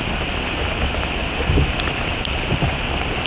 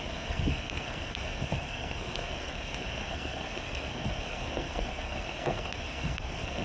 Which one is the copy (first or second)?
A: second